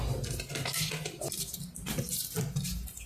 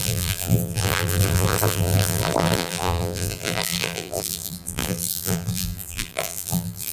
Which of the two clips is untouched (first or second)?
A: first